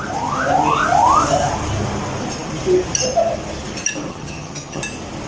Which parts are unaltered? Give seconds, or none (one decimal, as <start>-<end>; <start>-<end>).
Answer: 0.0-4.1; 4.8-5.3

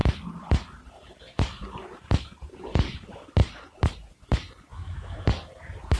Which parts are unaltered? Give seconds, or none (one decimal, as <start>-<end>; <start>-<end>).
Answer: 0.0-4.7; 5.2-6.0

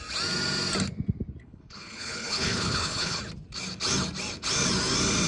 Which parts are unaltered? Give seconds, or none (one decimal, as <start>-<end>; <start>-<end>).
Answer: 0.0-1.4; 3.2-5.3

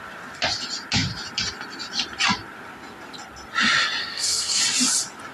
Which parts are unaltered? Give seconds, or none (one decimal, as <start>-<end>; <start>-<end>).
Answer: 0.0-4.0; 4.6-5.3

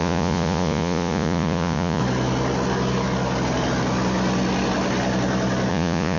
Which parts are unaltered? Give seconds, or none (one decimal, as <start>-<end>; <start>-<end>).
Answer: 2.0-5.7

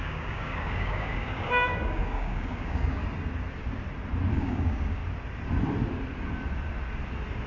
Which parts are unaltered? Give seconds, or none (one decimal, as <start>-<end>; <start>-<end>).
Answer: 3.0-4.3; 5.0-7.5

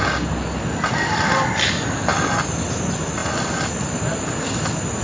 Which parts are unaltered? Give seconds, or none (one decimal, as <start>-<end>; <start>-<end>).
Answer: 0.0-5.0